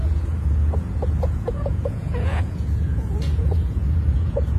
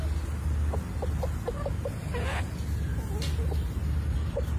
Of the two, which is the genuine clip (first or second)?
second